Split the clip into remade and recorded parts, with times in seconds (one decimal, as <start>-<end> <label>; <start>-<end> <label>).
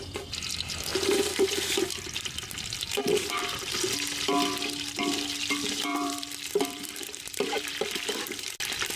0.0-0.9 recorded; 0.9-3.7 remade; 3.7-5.9 recorded; 5.9-7.7 remade; 7.7-9.0 recorded